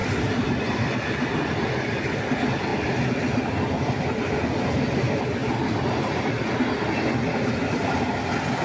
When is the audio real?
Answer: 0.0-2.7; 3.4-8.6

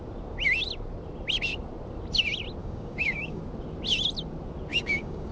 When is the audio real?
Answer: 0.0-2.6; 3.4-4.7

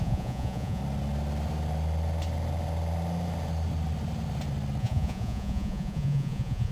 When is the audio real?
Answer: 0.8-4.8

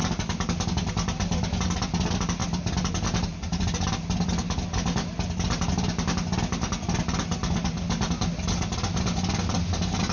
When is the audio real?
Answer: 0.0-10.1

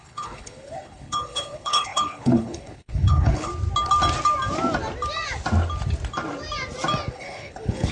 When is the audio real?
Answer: 3.5-7.1

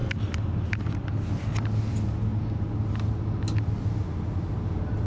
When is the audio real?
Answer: 0.0-5.1

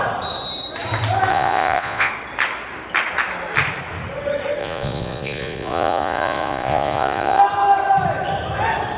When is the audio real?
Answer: 0.0-1.3; 2.1-4.6; 7.4-9.0